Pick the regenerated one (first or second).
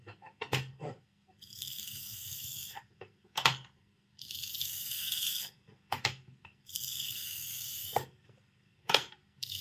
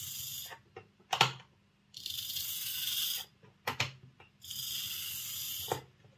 first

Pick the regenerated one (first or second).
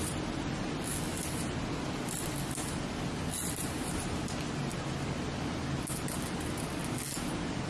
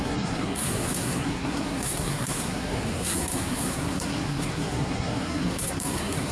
second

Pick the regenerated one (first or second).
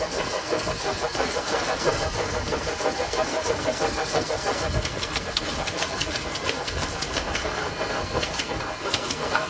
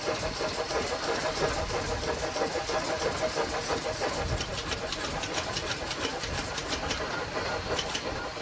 first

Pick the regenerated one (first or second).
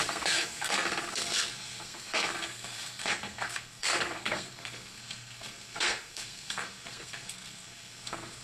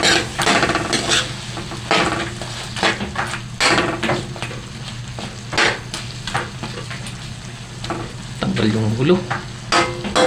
first